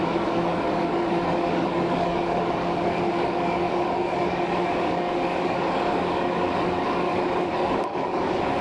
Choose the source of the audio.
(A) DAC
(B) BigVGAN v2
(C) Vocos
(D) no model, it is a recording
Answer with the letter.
A